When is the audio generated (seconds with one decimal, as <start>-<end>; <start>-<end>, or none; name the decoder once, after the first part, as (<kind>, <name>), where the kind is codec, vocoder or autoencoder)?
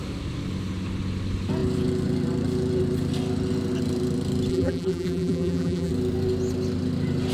4.5-5.9 (vocoder, BigVGAN v2)